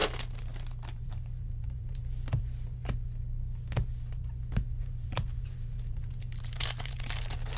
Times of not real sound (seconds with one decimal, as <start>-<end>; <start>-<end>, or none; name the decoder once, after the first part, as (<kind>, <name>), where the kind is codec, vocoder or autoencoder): 1.0-2.0 (vocoder, BigVGAN v2); 4.8-7.6

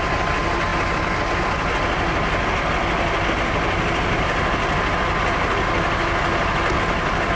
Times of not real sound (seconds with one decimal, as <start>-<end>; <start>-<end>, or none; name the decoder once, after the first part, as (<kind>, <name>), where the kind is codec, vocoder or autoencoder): none

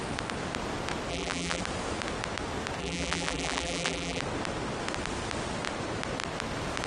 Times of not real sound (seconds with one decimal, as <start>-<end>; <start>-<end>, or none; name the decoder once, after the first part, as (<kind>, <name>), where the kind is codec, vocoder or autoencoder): 1.1-1.6 (vocoder, BigVGAN v2); 2.8-4.2

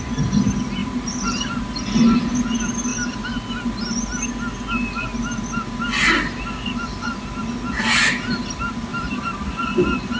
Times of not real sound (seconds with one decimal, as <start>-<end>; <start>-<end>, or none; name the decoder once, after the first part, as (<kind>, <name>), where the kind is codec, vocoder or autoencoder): 0.8-1.6 (vocoder, BigVGAN v2); 8.9-9.6

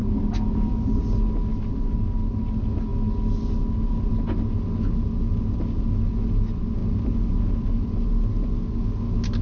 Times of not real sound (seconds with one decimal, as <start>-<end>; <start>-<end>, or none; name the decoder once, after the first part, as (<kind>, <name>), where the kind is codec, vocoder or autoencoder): none